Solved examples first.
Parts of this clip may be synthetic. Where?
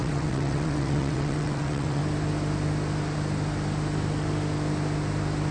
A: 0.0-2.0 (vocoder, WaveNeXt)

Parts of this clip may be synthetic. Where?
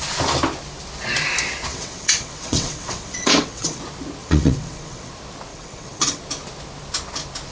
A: 1.7-3.8 (vocoder, WaveNeXt); 4.2-5.1; 5.5-6.2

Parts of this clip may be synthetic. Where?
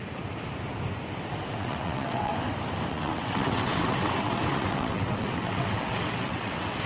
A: 1.5-2.3 (vocoder, WaveNeXt); 2.9-6.9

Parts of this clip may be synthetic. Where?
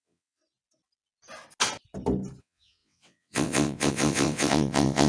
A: 0.0-0.4 (vocoder, WaveNeXt); 2.4-5.1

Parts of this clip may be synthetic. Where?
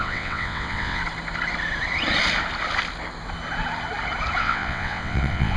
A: 0.0-1.0 (vocoder, WaveNeXt); 4.4-5.6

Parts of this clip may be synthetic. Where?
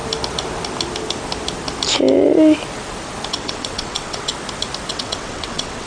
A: 3.3-4.3 (vocoder, WaveNeXt); 4.9-5.9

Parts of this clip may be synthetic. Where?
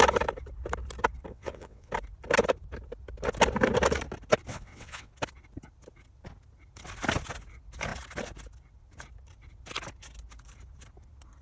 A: 1.3-1.9 (vocoder, WaveNeXt); 4.5-5.1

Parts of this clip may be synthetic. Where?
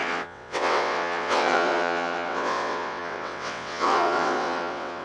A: 0.0-5.0 (vocoder, WaveNeXt)